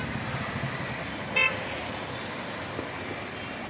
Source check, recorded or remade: recorded